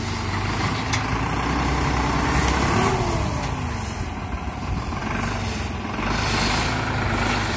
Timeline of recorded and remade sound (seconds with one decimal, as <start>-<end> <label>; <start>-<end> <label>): 0.0-7.6 recorded